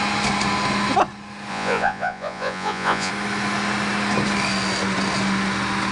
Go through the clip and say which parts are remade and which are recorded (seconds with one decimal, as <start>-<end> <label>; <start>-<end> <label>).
0.0-1.5 recorded; 1.5-3.1 remade; 3.1-5.9 recorded